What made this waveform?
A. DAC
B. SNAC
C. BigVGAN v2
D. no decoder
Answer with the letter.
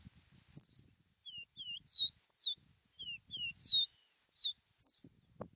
D